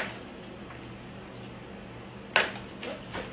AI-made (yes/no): no